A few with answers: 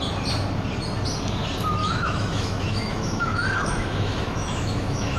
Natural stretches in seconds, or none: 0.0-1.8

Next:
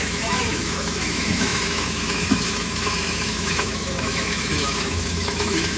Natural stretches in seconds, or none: none